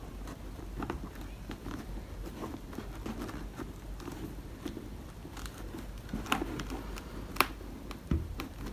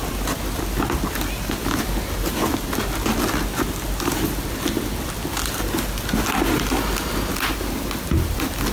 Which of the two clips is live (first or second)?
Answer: second